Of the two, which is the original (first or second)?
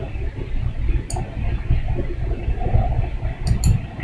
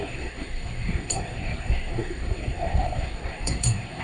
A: first